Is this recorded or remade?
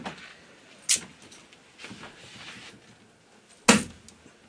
recorded